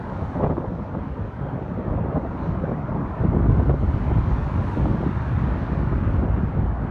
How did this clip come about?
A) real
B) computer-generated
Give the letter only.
B